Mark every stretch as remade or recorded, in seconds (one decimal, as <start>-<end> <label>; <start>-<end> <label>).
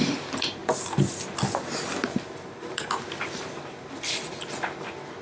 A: 0.0-5.2 recorded